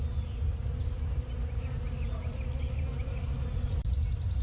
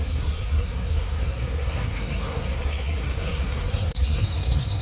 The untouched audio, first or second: first